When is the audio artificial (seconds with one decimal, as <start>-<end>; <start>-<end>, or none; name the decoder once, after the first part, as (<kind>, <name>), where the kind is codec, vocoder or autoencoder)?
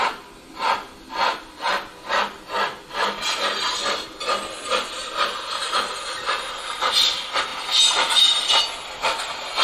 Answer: 5.0-6.9 (vocoder, BigVGAN v2); 7.5-8.6